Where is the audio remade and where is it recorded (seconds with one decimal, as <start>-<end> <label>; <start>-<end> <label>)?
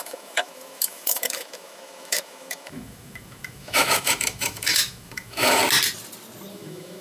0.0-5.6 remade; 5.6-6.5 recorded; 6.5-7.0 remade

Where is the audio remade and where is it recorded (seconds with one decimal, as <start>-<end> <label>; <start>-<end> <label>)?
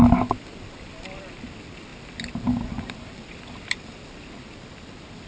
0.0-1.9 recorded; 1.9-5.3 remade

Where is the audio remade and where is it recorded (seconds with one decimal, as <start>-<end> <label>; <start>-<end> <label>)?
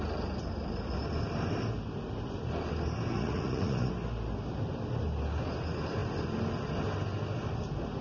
0.0-3.1 recorded; 3.1-3.9 remade; 3.9-8.0 recorded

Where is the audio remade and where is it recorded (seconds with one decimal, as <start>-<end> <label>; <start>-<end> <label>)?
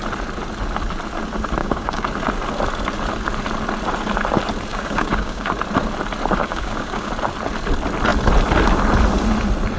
0.0-1.6 recorded; 1.6-2.1 remade; 2.1-4.7 recorded; 4.7-5.5 remade; 5.5-6.4 recorded; 6.4-7.1 remade; 7.1-9.8 recorded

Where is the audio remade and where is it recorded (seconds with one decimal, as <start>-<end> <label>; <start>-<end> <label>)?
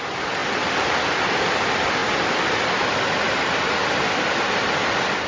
0.0-5.3 recorded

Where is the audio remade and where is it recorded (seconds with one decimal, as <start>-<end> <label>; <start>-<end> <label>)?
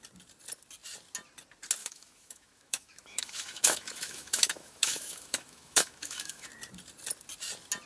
0.0-1.8 recorded; 1.8-6.5 remade; 6.5-7.9 recorded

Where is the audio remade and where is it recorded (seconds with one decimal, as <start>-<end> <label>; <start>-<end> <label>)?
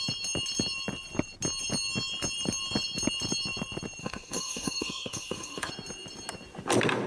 0.0-4.0 recorded; 4.0-5.7 remade; 5.7-7.1 recorded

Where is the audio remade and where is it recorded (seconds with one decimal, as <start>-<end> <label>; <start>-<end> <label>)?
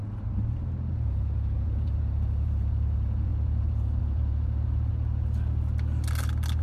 0.0-0.9 recorded; 0.9-4.9 remade; 4.9-6.6 recorded